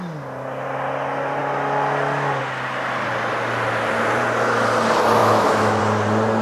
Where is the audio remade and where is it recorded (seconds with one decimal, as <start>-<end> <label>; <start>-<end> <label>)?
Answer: 0.0-5.2 recorded; 5.2-5.8 remade; 5.8-6.4 recorded